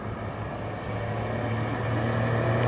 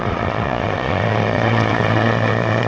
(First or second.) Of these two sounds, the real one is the first